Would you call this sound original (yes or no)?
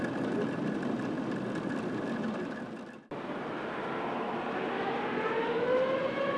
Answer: yes